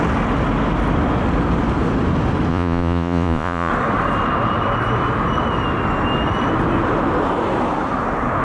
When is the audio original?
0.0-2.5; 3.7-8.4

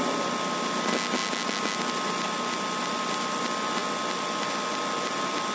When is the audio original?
0.0-5.5

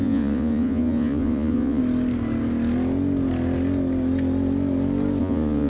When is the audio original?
1.8-5.2

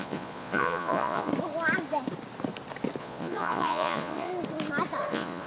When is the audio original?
1.3-3.0; 4.3-5.1

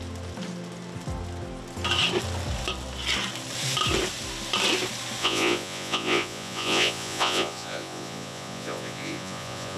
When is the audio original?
0.0-5.2

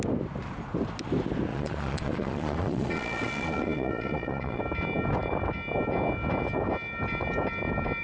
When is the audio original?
0.0-1.5; 4.6-8.0